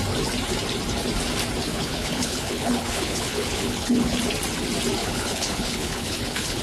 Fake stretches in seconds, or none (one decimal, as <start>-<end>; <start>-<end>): 1.7-4.2; 5.0-6.6